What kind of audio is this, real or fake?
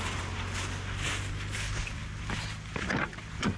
real